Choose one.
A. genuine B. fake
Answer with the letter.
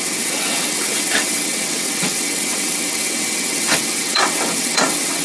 B